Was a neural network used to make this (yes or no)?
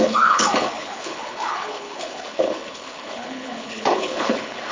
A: yes